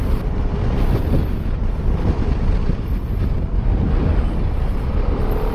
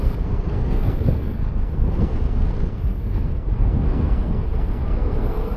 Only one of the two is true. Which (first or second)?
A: first